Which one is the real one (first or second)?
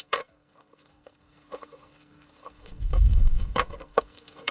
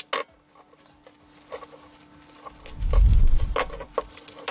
second